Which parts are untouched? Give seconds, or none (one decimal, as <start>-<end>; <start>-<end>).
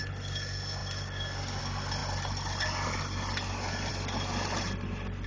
0.0-5.3